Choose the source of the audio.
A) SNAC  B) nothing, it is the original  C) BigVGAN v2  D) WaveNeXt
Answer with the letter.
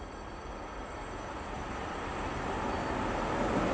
B